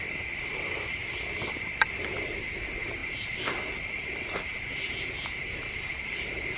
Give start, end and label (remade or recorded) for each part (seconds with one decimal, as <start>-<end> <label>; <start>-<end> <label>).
0.0-6.6 recorded